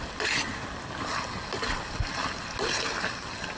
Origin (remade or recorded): recorded